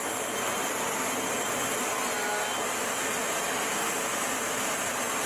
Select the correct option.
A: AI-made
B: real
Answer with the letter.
B